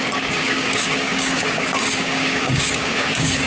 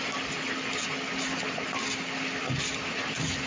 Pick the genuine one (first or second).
second